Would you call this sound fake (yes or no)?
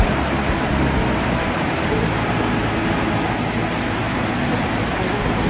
no